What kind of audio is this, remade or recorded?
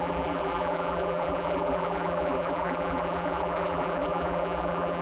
remade